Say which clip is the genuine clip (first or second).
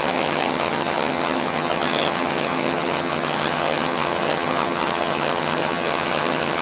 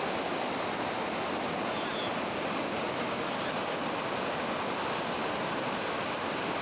second